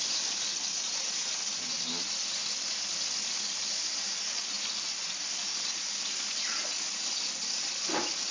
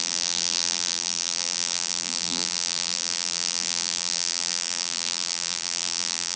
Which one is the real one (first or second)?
first